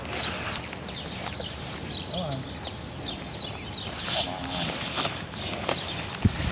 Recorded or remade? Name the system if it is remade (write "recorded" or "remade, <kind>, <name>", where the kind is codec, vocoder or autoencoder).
recorded